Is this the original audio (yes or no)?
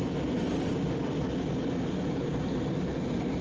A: yes